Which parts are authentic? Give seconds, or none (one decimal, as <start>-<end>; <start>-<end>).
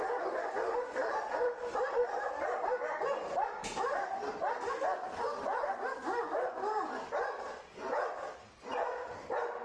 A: 0.0-1.0; 4.3-9.6